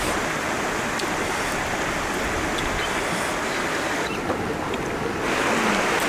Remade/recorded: recorded